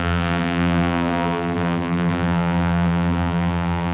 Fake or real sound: fake